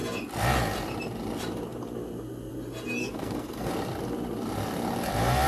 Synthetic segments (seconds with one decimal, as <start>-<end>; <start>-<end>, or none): 3.0-3.7